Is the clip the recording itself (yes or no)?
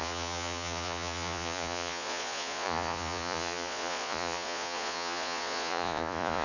no